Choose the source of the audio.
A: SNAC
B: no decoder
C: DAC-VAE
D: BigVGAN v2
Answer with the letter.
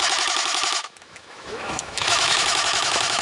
C